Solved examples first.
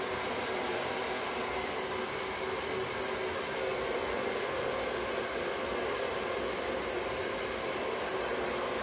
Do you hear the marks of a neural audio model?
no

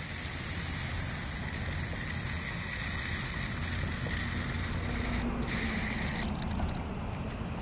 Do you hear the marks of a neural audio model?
no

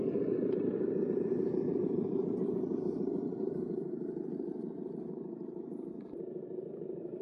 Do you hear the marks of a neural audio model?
yes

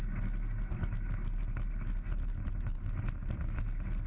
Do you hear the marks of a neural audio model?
no